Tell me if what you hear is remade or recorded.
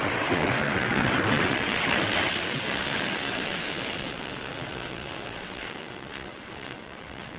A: remade